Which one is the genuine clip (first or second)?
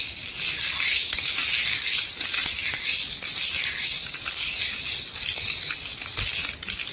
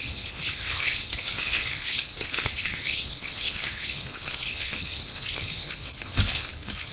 first